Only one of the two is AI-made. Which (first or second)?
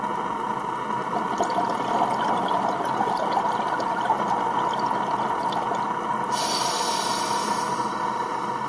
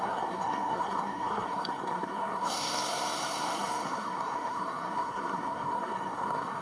second